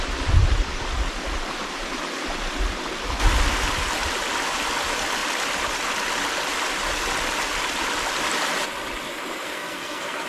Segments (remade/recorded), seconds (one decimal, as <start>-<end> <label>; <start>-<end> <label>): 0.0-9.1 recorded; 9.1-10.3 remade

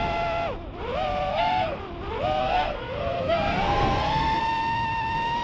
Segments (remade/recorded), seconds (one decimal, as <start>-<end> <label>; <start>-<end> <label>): 0.0-1.3 recorded; 1.3-1.8 remade; 1.8-2.4 recorded; 2.4-4.4 remade; 4.4-5.4 recorded

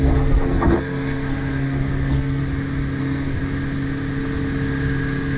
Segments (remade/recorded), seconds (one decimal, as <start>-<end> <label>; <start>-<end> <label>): 0.0-2.4 remade; 2.4-3.0 recorded; 3.0-3.4 remade; 3.4-5.4 recorded

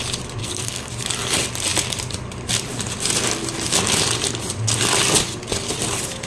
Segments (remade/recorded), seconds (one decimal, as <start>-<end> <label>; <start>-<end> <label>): 0.0-0.4 recorded; 0.4-0.9 remade; 0.9-6.3 recorded